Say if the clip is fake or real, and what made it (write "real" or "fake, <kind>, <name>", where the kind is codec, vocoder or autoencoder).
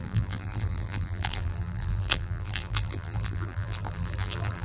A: fake, vocoder, BigVGAN v2